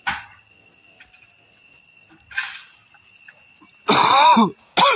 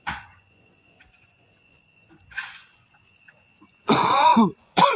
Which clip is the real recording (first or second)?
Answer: first